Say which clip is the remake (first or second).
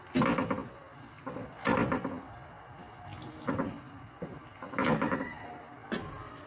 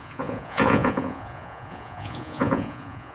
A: second